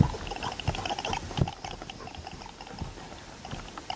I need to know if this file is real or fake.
real